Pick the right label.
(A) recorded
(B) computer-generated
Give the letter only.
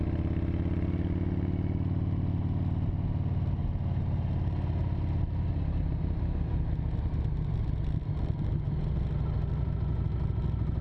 A